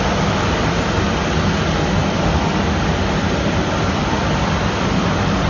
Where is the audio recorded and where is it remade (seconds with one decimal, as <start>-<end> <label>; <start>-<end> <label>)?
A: 0.0-5.5 recorded